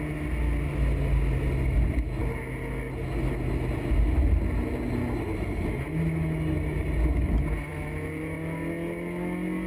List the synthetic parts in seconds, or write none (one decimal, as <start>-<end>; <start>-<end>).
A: none

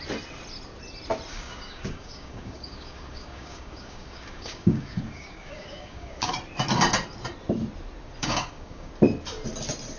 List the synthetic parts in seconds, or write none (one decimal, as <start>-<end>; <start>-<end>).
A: 1.3-6.3; 8.2-8.9

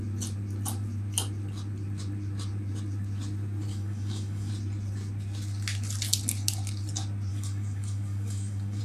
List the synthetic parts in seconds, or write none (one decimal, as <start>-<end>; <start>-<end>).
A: 3.7-4.5; 7.3-8.8

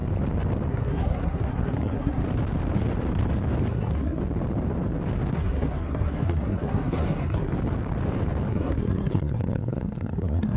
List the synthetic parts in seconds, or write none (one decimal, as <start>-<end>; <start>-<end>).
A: 0.7-2.2; 3.7-4.2; 5.3-7.5; 8.5-10.6